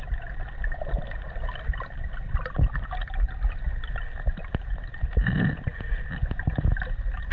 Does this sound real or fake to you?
real